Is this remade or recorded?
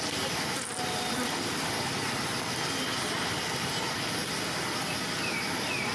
recorded